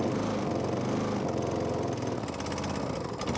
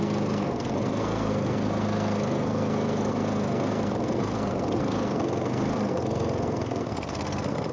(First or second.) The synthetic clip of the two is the second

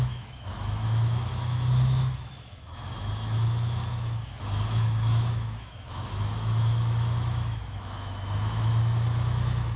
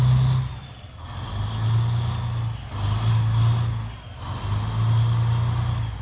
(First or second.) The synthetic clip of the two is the first